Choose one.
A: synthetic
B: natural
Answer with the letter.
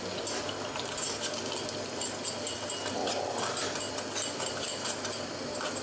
B